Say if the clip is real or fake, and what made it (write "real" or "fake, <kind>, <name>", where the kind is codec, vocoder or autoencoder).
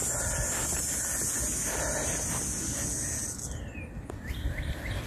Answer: real